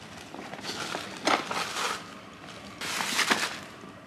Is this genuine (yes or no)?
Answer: yes